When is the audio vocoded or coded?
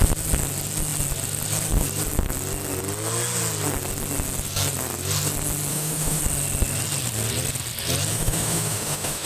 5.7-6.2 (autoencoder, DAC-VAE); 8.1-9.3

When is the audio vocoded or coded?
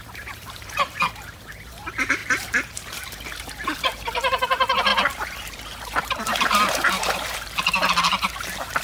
0.0-8.8 (vocoder, BigVGAN v2)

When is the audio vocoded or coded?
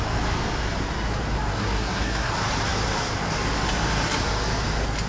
1.5-2.3 (codec, SNAC)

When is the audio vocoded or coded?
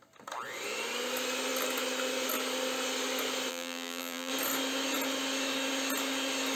3.5-4.3 (vocoder, BigVGAN v2)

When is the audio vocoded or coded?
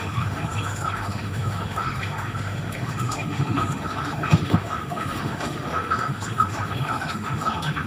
0.0-7.9 (autoencoder, DAC-VAE)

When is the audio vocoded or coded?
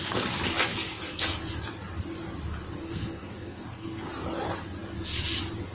0.7-1.4 (codec, SNAC); 2.8-4.1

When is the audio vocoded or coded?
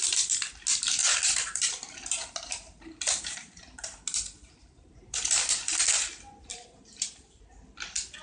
1.0-4.0 (vocoder, BigVGAN v2); 4.6-5.2; 6.5-7.4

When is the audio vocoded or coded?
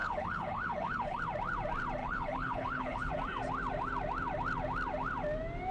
0.0-1.2 (codec, HILCodec); 2.0-3.1